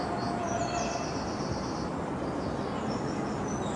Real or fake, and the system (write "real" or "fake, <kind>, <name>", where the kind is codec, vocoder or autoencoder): real